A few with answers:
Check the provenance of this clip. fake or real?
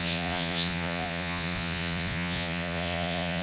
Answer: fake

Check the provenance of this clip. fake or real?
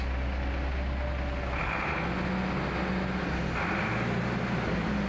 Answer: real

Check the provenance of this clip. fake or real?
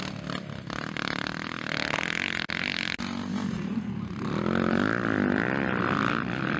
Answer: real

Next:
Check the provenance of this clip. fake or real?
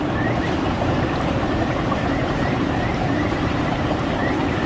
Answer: fake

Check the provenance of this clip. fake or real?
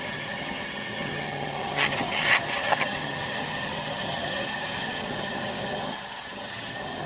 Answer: fake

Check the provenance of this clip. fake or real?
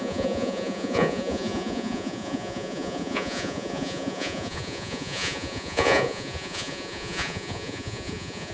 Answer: fake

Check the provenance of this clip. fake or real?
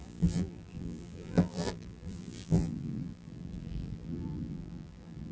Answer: fake